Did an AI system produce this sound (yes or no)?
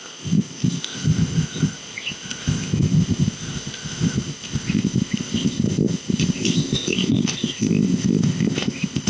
yes